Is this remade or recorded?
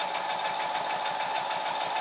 recorded